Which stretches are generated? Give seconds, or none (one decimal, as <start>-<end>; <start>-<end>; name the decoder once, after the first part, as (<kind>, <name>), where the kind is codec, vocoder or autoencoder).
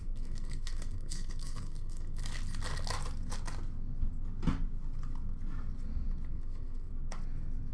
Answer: 0.0-2.2 (codec, SNAC); 6.3-6.9